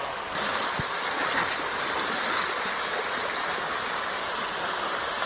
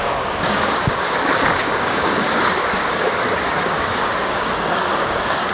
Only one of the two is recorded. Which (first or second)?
first